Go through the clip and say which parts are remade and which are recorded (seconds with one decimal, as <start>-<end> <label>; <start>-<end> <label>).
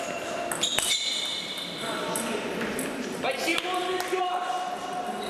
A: 0.0-1.3 recorded; 1.3-2.5 remade; 2.5-5.3 recorded